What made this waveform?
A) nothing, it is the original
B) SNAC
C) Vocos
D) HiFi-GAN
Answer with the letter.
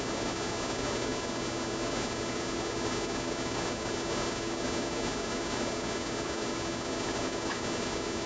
A